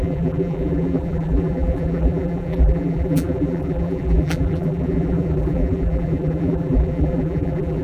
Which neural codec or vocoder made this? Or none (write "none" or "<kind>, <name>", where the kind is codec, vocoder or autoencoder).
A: vocoder, BigVGAN v2